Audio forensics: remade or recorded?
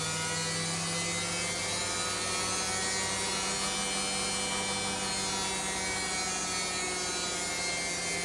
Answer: recorded